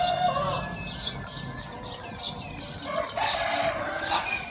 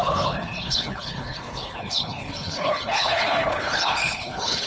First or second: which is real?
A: first